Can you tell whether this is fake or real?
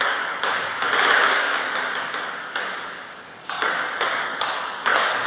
fake